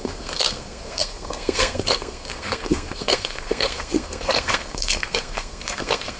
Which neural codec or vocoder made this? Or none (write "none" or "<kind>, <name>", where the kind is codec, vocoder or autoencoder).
codec, SNAC